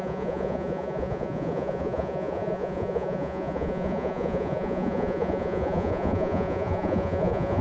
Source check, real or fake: fake